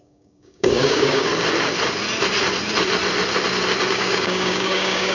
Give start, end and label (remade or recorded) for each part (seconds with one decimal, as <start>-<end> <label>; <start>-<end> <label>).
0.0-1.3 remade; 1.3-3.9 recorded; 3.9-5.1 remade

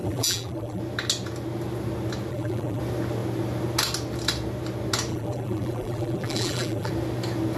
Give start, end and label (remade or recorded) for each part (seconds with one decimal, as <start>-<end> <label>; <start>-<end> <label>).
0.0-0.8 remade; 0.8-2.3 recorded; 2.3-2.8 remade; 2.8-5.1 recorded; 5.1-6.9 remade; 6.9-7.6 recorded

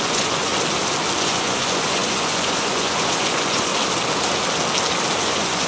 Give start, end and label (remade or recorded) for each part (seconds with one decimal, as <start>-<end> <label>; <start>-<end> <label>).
0.0-0.5 remade; 0.5-1.2 recorded; 1.2-3.7 remade; 3.7-5.2 recorded; 5.2-5.7 remade

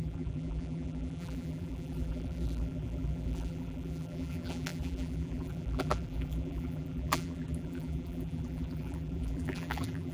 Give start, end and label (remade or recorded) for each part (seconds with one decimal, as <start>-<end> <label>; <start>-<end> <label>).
0.0-10.1 remade